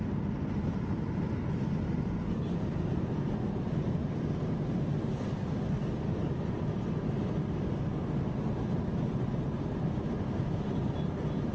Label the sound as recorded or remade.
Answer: recorded